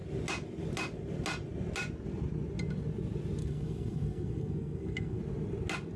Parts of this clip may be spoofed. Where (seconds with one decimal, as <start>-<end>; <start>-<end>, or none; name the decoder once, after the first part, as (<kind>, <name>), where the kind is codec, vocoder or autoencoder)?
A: 3.4-5.2 (codec, SNAC)

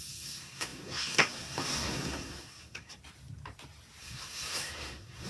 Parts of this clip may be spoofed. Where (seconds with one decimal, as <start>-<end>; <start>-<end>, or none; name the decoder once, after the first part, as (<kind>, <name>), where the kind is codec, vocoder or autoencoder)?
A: 0.0-3.0 (codec, SNAC); 4.0-5.3

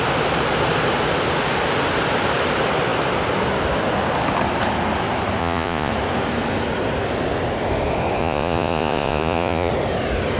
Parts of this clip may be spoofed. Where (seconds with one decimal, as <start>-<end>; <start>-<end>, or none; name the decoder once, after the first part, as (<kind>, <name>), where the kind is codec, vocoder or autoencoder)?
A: 5.4-5.9 (vocoder, Vocos); 8.2-9.7